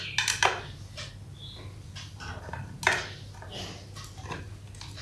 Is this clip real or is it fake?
real